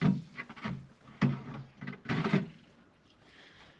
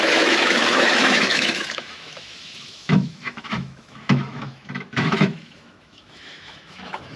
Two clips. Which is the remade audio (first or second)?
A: second